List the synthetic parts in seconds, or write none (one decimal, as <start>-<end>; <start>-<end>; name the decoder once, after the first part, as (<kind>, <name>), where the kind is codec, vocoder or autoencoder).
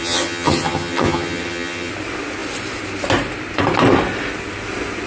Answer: 0.0-1.9 (vocoder, HiFi-GAN)